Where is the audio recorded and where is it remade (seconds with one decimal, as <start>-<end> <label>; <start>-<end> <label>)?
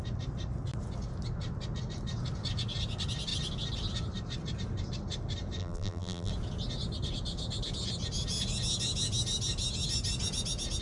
0.0-5.6 recorded; 5.6-6.3 remade; 6.3-10.8 recorded